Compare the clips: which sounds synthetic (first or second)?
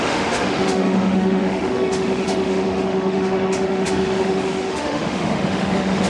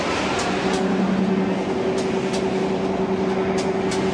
first